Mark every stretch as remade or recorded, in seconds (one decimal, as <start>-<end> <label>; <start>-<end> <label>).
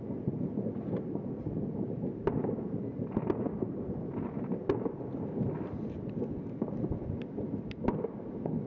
0.0-8.7 recorded